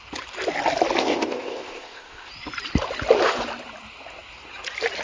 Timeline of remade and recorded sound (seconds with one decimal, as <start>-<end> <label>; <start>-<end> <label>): 0.0-1.0 recorded; 1.0-2.3 remade; 2.3-5.0 recorded